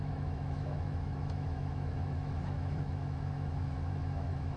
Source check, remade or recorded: remade